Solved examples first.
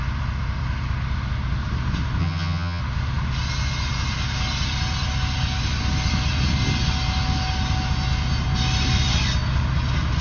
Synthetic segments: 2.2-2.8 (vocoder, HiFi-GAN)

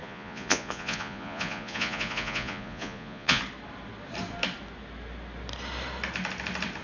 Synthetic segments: 0.0-3.4 (vocoder, Vocos)

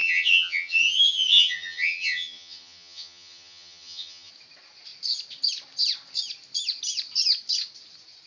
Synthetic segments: 0.0-4.3 (vocoder, HiFi-GAN)

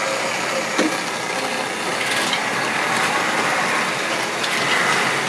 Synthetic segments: none

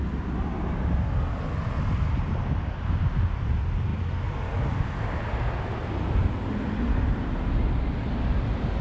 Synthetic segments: none